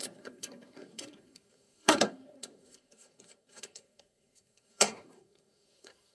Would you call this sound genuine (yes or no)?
no